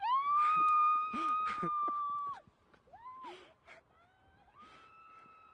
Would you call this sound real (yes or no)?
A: yes